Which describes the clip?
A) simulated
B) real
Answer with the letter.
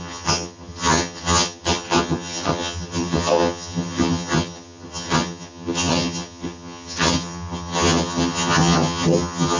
A